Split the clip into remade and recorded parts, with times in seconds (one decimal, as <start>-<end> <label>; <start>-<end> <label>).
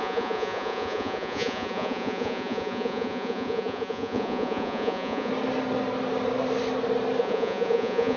0.0-5.3 remade; 5.3-7.2 recorded; 7.2-8.2 remade